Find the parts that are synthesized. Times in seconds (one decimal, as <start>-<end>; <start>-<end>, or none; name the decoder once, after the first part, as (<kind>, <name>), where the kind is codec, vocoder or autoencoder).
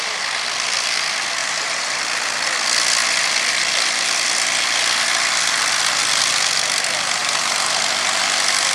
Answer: 1.4-2.0 (vocoder, BigVGAN v2); 7.2-7.8